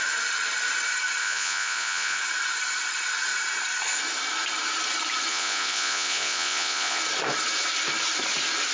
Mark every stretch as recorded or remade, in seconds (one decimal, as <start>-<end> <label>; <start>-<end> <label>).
0.0-1.2 recorded; 1.2-2.2 remade; 2.2-5.3 recorded; 5.3-7.0 remade; 7.0-8.7 recorded